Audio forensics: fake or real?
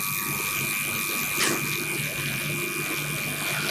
real